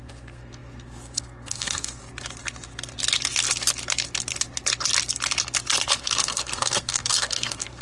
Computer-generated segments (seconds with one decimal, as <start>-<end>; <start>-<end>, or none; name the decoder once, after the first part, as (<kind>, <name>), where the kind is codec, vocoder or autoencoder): 0.0-2.0 (codec, SNAC); 6.0-7.8